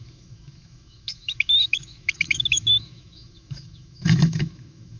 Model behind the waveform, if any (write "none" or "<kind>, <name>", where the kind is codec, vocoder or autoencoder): autoencoder, DAC-VAE